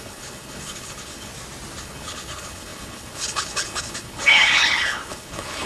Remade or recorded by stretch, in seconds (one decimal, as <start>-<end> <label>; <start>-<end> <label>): 0.0-1.3 remade; 1.3-1.8 recorded; 1.8-5.7 remade